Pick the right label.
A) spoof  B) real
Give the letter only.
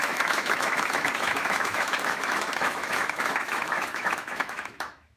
A